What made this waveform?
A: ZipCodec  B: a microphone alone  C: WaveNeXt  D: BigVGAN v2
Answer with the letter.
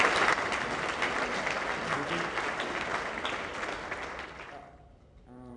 B